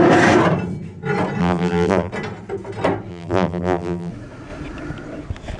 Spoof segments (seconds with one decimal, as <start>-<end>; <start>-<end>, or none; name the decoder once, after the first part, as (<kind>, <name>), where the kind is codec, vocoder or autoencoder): 1.4-2.1 (vocoder, BigVGAN v2); 3.1-4.1